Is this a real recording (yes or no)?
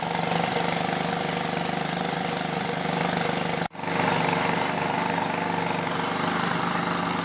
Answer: yes